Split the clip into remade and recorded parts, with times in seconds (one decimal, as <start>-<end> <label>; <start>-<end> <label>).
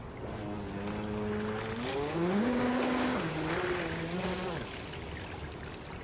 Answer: 0.0-1.9 recorded; 1.9-3.3 remade; 3.3-6.0 recorded